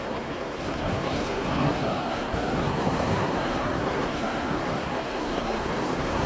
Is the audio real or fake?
fake